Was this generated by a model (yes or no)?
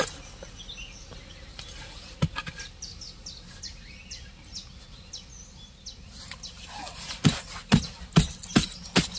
no